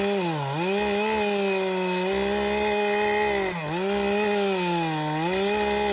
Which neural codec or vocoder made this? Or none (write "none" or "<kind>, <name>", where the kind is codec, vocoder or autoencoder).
none